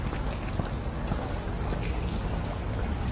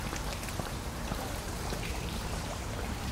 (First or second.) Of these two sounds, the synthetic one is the second